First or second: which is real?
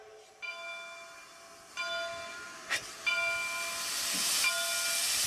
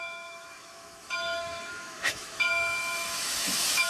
first